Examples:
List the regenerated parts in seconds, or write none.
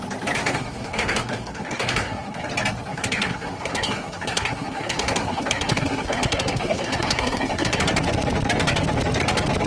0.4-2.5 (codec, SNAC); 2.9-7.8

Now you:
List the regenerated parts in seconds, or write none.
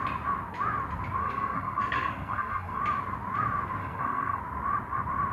1.2-2.8 (codec, SNAC); 3.8-4.4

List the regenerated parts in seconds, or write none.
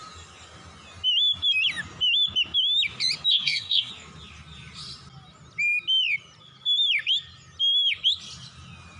3.3-3.9 (codec, SNAC)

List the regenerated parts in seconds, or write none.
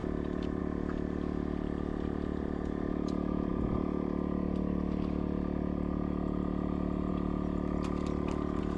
none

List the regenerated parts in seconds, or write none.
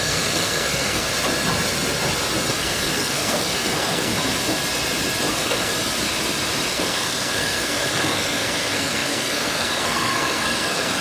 0.0-1.1 (codec, SNAC); 2.5-4.1; 5.3-5.7; 6.7-11.0